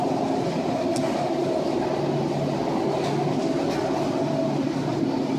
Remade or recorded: recorded